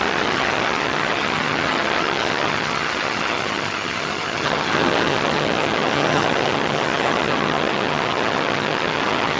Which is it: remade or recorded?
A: remade